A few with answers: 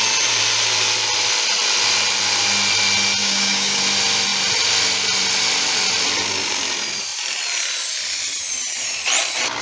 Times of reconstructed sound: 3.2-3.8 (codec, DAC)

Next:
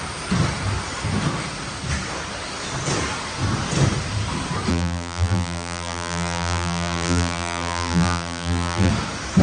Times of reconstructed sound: 4.7-8.9 (vocoder, BigVGAN v2)

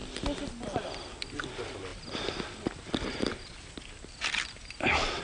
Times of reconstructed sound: none

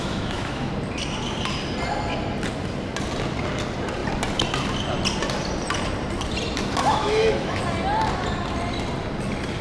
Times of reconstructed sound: 0.0-0.7 (autoencoder, DAC-VAE); 6.8-7.6

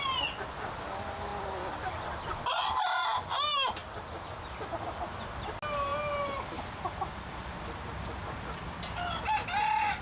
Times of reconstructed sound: none

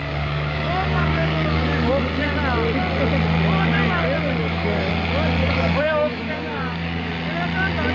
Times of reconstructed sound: 0.0-1.9 (codec, DAC); 4.4-4.9; 5.4-7.1

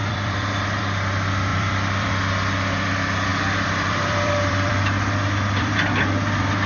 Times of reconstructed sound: 0.0-0.8 (vocoder, BigVGAN v2); 1.5-2.1; 3.3-5.9